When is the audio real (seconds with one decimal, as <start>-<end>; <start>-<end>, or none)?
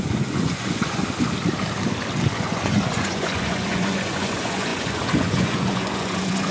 1.0-2.3